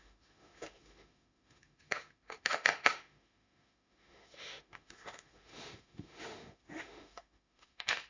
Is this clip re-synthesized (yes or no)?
yes